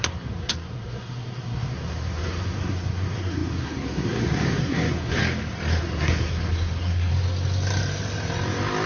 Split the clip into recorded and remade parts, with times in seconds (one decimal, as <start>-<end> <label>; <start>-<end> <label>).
0.0-5.2 remade; 5.2-5.8 recorded; 5.8-7.1 remade; 7.1-8.9 recorded